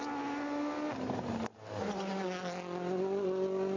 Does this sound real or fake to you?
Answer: real